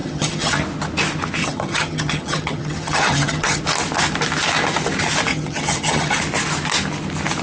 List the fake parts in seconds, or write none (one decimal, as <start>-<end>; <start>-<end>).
0.0-0.6; 1.4-3.6; 5.3-6.2